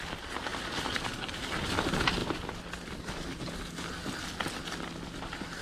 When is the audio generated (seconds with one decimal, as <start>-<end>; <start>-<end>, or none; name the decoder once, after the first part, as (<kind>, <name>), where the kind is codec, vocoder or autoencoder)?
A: 0.5-1.8 (vocoder, BigVGAN v2)